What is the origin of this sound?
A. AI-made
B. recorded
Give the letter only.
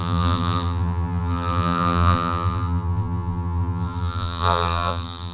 A